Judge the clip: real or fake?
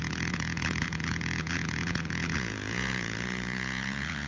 fake